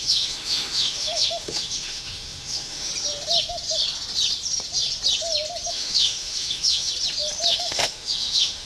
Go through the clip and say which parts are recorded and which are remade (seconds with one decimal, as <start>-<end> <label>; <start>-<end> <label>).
0.0-2.9 remade; 2.9-5.7 recorded; 5.7-6.9 remade; 6.9-7.5 recorded; 7.5-8.7 remade